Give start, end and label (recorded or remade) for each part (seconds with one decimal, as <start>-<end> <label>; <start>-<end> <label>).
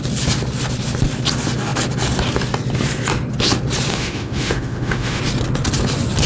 0.0-3.9 recorded; 3.9-5.2 remade; 5.2-6.3 recorded